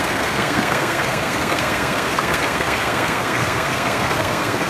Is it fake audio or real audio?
fake